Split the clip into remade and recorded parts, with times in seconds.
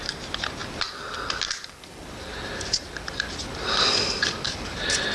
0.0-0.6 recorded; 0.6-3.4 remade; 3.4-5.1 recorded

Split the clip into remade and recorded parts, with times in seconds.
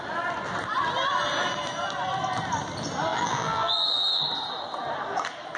0.0-3.1 recorded; 3.1-4.2 remade; 4.2-5.6 recorded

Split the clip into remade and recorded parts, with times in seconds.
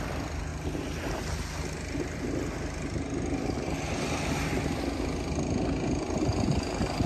0.0-7.1 recorded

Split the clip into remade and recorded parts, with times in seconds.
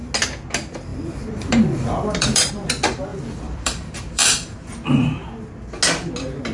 0.0-0.9 recorded; 0.9-2.5 remade; 2.5-3.1 recorded; 3.1-4.7 remade; 4.7-6.5 recorded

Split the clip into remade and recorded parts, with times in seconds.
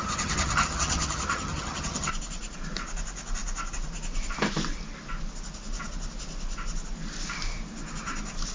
0.0-2.1 remade; 2.1-8.5 recorded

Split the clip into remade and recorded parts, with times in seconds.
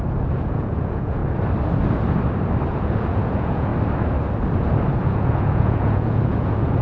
0.0-1.2 remade; 1.2-2.7 recorded; 2.7-3.7 remade; 3.7-4.9 recorded; 4.9-6.8 remade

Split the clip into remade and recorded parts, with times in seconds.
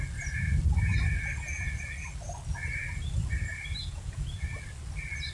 0.0-3.8 recorded; 3.8-4.5 remade; 4.5-5.3 recorded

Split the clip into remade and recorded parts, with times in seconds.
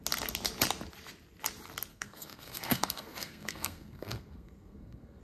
0.0-1.9 recorded; 1.9-5.2 remade